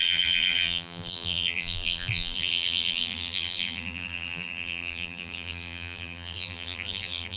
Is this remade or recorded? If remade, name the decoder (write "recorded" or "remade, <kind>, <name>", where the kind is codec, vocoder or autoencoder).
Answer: remade, vocoder, BigVGAN v2